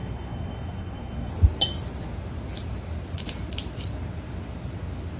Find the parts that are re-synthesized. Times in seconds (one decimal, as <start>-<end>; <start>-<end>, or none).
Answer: 0.0-1.3